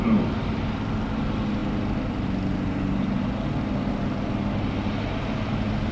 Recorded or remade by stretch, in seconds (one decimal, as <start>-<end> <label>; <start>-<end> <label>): 0.0-5.9 recorded